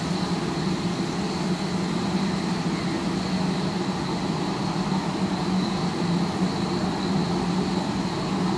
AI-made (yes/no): no